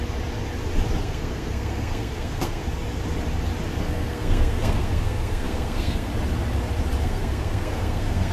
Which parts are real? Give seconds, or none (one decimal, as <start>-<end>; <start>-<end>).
0.0-1.0; 2.6-3.8; 6.1-7.0